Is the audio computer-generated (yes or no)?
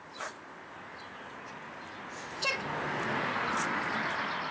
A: no